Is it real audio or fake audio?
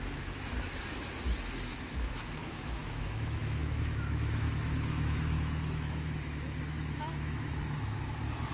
fake